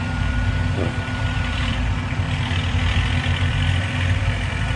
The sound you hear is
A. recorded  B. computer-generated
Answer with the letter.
B